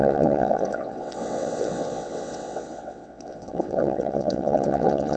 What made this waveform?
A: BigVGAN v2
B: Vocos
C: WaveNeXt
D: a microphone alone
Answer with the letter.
C